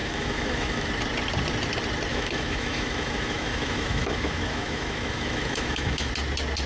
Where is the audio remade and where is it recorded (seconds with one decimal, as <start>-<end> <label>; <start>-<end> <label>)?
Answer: 0.0-0.9 remade; 0.9-2.1 recorded; 2.1-6.1 remade; 6.1-6.7 recorded